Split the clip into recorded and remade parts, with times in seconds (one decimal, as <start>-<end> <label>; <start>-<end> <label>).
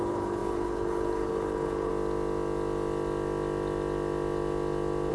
0.0-1.9 remade; 1.9-5.1 recorded